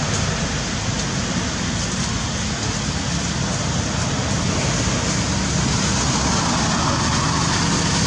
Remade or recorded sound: recorded